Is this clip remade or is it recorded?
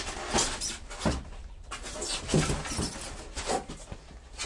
recorded